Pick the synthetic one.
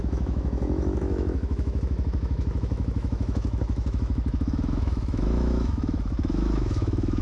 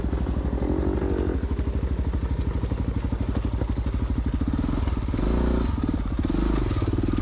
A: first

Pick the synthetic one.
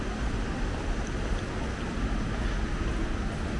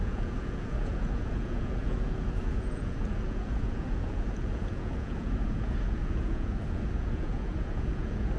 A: second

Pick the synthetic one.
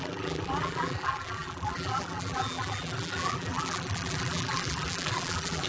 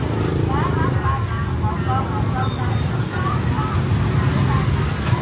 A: first